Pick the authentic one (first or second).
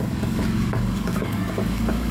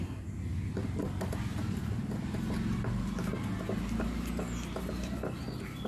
second